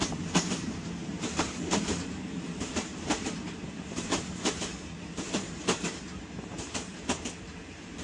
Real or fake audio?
fake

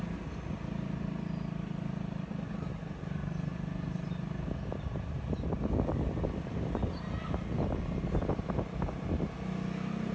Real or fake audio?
real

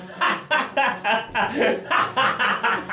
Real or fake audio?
real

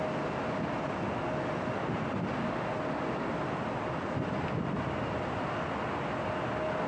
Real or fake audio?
real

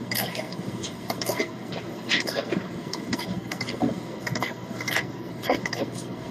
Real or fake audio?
fake